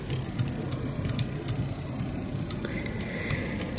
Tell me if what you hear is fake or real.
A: real